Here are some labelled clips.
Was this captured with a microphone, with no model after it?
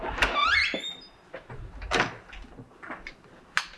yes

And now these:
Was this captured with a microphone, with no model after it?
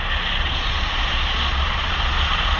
no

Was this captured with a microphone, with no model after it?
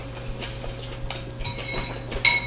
yes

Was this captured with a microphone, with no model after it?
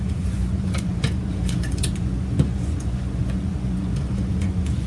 no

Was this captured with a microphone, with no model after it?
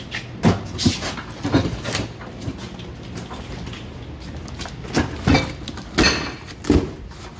yes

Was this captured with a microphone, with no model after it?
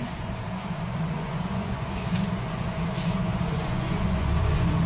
no